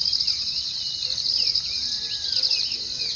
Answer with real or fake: real